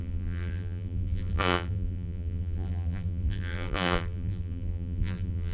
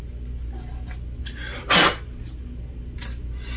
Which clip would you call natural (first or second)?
second